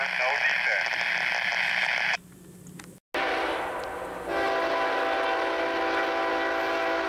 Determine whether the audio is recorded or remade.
recorded